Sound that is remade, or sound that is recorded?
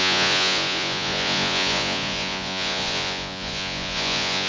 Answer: remade